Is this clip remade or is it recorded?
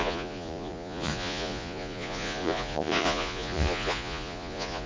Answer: remade